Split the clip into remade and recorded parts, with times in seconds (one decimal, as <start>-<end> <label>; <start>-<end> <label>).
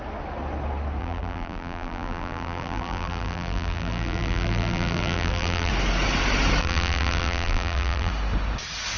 0.0-1.0 recorded; 1.0-5.7 remade; 5.7-6.6 recorded; 6.6-8.1 remade; 8.1-9.0 recorded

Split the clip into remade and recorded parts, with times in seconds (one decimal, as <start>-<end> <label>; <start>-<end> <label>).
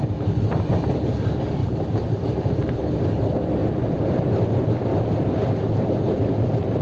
0.0-1.6 recorded; 1.6-2.5 remade; 2.5-6.8 recorded